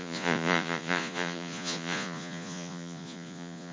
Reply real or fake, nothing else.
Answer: fake